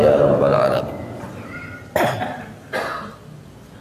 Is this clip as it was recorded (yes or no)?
yes